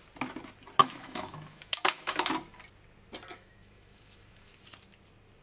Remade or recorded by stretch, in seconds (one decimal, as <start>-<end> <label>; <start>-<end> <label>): 0.0-0.8 recorded; 0.8-2.3 remade; 2.3-3.3 recorded; 3.3-4.5 remade; 4.5-5.4 recorded